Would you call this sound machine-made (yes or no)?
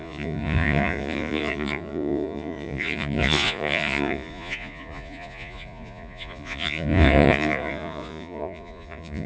yes